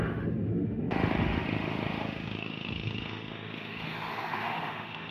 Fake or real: fake